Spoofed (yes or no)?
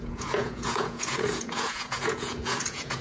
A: yes